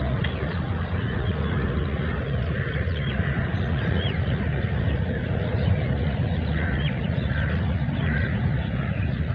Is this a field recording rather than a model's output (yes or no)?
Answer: no